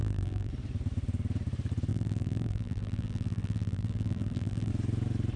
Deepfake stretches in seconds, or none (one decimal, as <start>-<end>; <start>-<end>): 0.0-0.5; 1.9-4.7